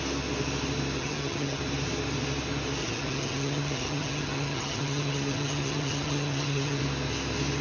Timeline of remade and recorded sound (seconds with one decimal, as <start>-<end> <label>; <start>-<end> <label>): 0.0-1.0 recorded; 1.0-1.6 remade; 1.6-2.8 recorded; 2.8-6.8 remade; 6.8-7.6 recorded

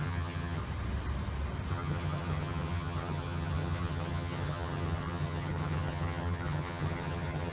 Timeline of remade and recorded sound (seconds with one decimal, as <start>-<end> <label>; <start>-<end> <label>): 0.0-0.6 remade; 0.6-1.7 recorded; 1.7-7.5 remade

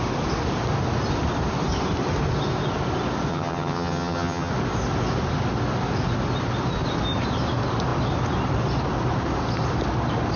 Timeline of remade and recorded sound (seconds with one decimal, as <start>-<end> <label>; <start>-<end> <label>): 0.0-3.3 recorded; 3.3-4.5 remade; 4.5-10.4 recorded

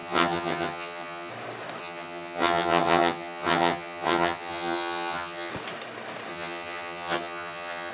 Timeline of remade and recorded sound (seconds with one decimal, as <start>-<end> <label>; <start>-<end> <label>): 0.0-1.3 remade; 1.3-1.8 recorded; 1.8-5.5 remade; 5.5-6.3 recorded; 6.3-7.9 remade

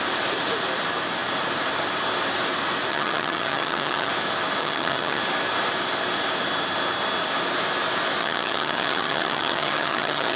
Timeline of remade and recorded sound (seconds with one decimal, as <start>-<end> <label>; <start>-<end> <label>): 0.0-2.9 recorded; 2.9-4.1 remade; 4.1-4.6 recorded; 4.6-5.2 remade; 5.2-8.2 recorded; 8.2-10.4 remade

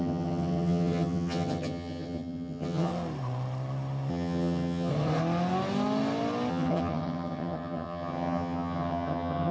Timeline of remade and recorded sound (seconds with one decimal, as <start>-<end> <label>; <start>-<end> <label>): 0.0-2.9 remade; 2.9-4.1 recorded; 4.1-4.9 remade; 4.9-6.5 recorded; 6.5-9.5 remade